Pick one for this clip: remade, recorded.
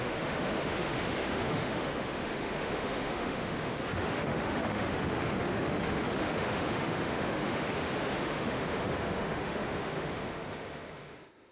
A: remade